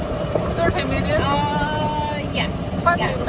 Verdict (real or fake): real